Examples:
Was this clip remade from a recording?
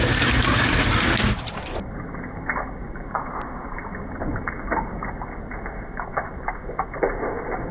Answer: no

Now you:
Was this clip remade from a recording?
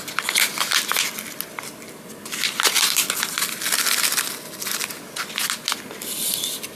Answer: no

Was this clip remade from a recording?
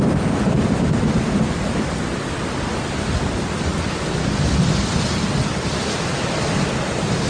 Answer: no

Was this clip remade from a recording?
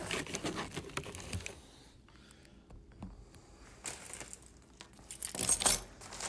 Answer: no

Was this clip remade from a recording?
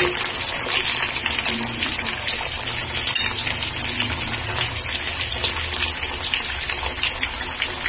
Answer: no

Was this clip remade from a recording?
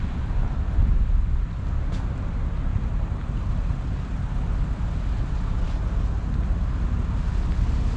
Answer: no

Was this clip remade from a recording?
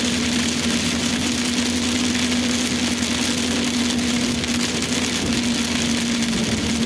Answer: no